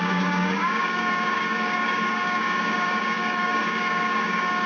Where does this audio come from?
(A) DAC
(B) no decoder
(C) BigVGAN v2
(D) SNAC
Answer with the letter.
A